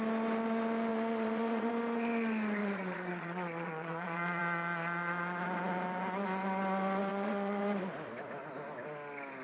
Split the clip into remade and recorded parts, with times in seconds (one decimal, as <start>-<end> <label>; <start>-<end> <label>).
0.0-0.9 recorded; 0.9-1.7 remade; 1.7-2.6 recorded; 2.6-4.4 remade; 4.4-7.1 recorded; 7.1-7.6 remade; 7.6-9.4 recorded

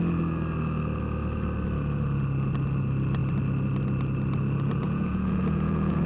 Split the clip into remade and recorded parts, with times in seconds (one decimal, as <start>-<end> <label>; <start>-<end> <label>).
0.0-4.8 recorded; 4.8-6.1 remade